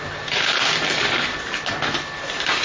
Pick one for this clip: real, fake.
real